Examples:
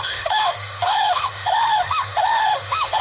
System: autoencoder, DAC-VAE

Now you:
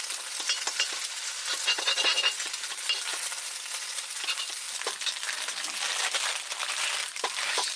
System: none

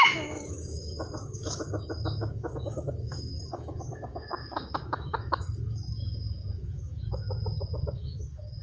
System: autoencoder, DAC-VAE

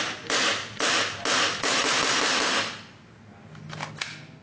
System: none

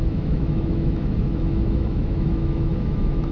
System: autoencoder, DAC-VAE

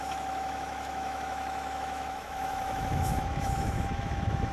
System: autoencoder, DAC-VAE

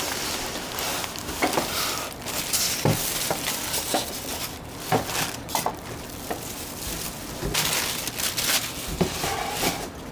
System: none